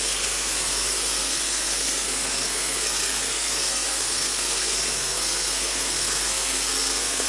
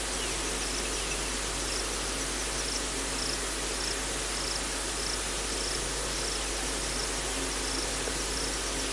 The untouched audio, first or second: second